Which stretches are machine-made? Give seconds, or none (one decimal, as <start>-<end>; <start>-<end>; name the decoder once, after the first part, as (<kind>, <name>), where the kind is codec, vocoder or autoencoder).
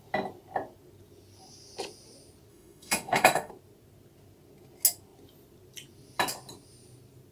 2.5-3.5 (autoencoder, DAC-VAE)